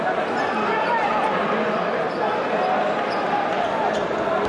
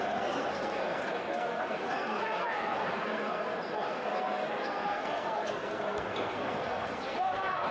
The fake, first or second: second